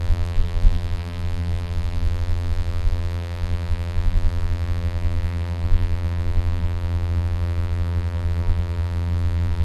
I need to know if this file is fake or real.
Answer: fake